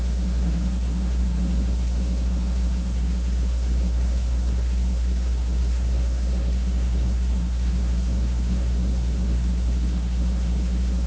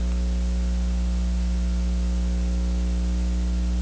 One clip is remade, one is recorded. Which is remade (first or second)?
first